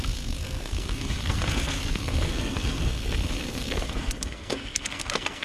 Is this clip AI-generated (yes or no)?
yes